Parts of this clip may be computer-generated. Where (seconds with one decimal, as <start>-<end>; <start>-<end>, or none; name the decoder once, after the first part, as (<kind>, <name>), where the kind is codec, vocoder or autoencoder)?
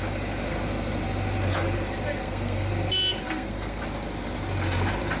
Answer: 2.2-2.7 (codec, SNAC); 3.2-3.8